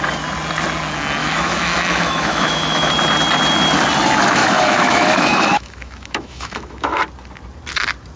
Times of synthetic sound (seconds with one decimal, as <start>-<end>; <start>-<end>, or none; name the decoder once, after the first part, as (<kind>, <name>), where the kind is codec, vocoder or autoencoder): 1.2-2.9 (autoencoder, DAC-VAE); 4.4-7.0